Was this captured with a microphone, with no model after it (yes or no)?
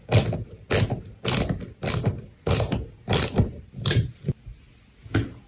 yes